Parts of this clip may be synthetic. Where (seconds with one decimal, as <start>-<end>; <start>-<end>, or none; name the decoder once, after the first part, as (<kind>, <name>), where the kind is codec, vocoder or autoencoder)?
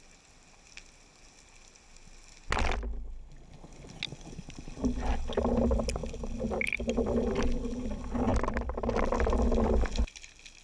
none